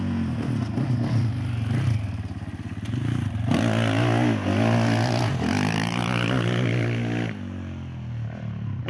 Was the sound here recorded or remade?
recorded